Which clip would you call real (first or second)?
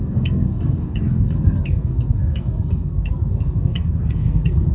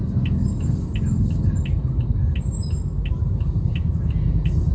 second